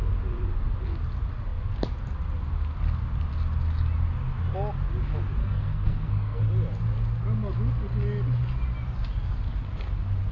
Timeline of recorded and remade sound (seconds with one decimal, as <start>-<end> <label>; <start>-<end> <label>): 0.0-5.4 recorded; 5.4-6.4 remade; 6.4-10.3 recorded